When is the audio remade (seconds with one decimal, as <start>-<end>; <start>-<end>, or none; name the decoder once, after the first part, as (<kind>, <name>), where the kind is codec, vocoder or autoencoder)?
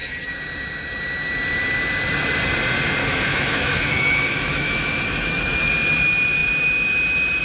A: 3.0-5.7 (autoencoder, DAC-VAE)